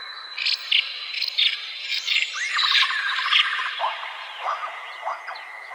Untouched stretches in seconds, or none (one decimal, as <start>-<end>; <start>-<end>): 0.0-1.9; 3.0-3.5; 4.9-5.7